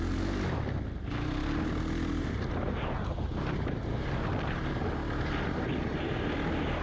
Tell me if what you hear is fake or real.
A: real